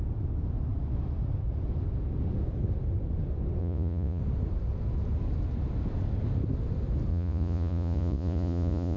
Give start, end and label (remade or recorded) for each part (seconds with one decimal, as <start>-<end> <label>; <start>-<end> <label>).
0.0-3.6 recorded; 3.6-4.2 remade; 4.2-7.1 recorded; 7.1-9.0 remade